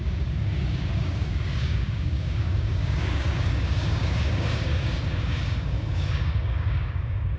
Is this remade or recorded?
remade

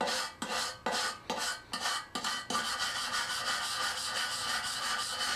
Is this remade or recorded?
recorded